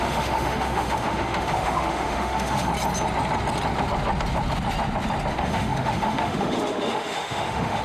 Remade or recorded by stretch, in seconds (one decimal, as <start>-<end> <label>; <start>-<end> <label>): 0.0-2.7 remade; 2.7-5.3 recorded; 5.3-7.8 remade